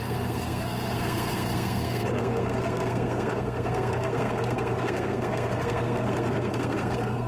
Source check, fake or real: fake